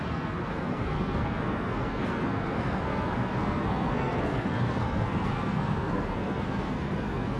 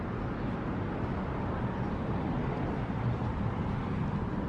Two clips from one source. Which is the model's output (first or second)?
first